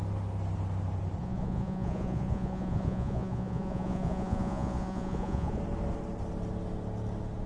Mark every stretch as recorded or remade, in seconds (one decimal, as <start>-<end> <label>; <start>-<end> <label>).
0.0-1.2 recorded; 1.2-5.6 remade; 5.6-7.5 recorded